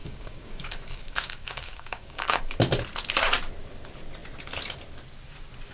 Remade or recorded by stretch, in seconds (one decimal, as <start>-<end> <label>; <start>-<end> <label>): 0.0-2.4 remade; 2.4-5.7 recorded